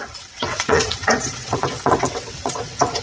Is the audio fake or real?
fake